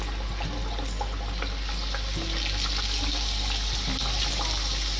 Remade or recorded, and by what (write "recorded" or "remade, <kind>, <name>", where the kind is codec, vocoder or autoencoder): recorded